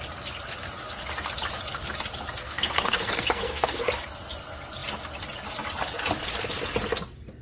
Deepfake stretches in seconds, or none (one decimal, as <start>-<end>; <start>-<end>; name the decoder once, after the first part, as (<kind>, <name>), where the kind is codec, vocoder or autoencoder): 2.4-3.9 (codec, SNAC)